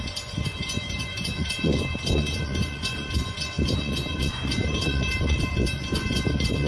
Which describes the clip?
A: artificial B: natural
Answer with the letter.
A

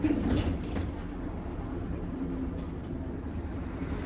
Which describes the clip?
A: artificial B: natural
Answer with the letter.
B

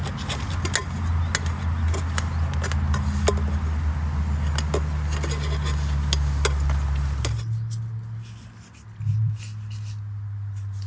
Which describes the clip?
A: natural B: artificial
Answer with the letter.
A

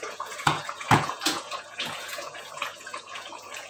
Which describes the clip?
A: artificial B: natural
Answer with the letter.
A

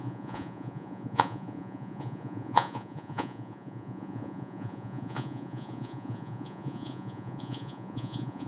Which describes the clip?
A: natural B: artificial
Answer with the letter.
B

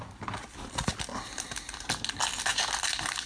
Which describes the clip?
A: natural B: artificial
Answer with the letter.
A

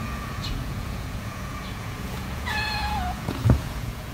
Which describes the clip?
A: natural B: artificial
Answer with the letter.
B